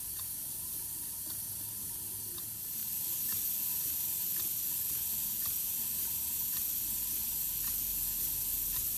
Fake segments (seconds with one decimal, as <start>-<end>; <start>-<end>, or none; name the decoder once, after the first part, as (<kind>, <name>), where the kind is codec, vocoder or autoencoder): 2.8-4.7 (vocoder, BigVGAN v2)